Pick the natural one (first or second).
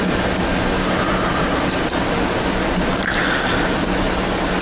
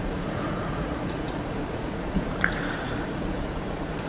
first